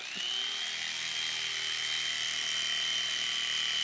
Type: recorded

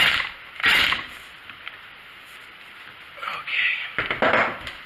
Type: recorded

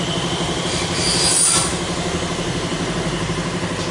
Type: recorded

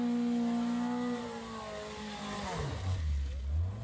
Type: recorded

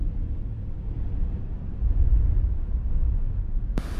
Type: remade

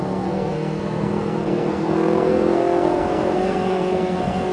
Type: remade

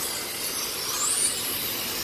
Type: recorded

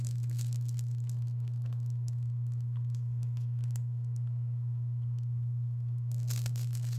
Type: remade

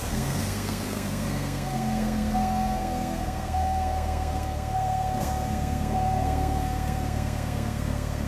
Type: remade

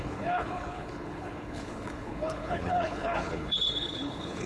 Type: remade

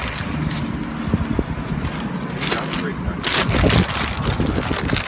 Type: recorded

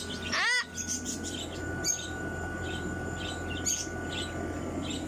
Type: recorded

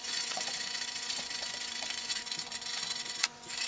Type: remade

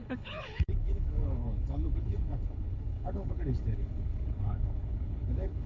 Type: remade